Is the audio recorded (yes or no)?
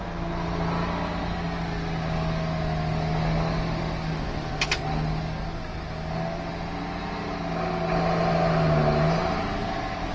yes